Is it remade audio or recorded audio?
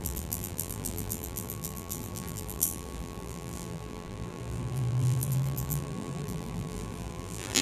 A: remade